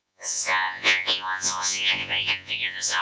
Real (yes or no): no